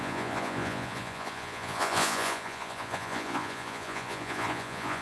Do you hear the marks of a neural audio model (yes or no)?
yes